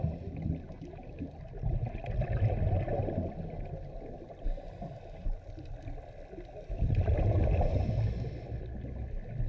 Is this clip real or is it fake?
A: real